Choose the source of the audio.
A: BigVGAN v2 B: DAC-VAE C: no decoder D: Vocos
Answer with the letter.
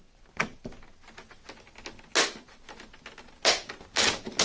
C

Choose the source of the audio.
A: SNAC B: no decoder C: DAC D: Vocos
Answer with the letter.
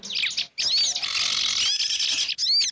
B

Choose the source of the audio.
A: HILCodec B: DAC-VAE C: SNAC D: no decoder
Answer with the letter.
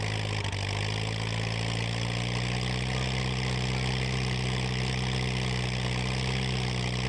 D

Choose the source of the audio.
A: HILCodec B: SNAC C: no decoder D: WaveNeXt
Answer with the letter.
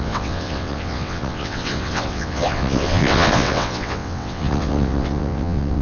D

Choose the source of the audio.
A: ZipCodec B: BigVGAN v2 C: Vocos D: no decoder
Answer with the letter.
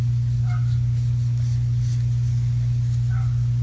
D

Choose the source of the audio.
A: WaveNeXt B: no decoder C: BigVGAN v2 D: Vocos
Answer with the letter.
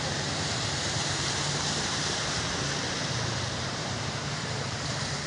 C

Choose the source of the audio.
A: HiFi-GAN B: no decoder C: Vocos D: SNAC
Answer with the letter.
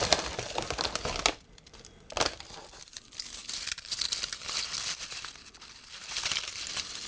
B